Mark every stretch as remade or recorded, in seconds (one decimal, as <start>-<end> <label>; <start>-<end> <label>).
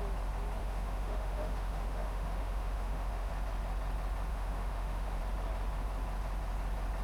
0.0-0.6 recorded; 0.6-3.3 remade; 3.3-4.3 recorded; 4.3-5.2 remade; 5.2-7.0 recorded